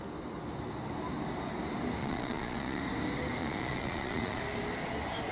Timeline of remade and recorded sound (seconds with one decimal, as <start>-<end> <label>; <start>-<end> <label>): 0.0-2.0 recorded; 2.0-2.8 remade; 2.8-3.4 recorded; 3.4-4.4 remade; 4.4-5.3 recorded